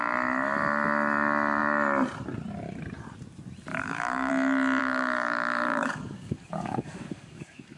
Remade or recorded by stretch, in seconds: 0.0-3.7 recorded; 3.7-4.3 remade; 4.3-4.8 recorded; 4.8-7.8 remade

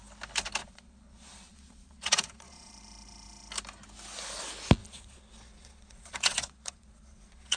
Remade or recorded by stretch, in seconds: 0.0-0.6 recorded; 0.6-2.7 remade; 2.7-4.8 recorded; 4.8-7.6 remade

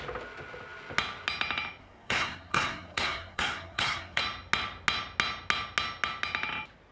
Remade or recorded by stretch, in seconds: 0.0-1.8 recorded; 1.8-4.2 remade; 4.2-6.9 recorded

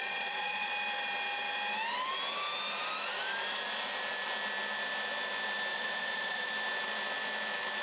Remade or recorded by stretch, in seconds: 0.0-0.7 remade; 0.7-5.7 recorded; 5.7-6.5 remade; 6.5-7.8 recorded